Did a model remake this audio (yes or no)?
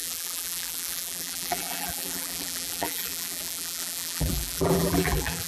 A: yes